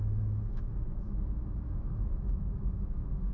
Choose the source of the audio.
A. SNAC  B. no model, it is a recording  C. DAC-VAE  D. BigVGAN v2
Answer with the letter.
C